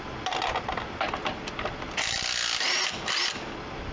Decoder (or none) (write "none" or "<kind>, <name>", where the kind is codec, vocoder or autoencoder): none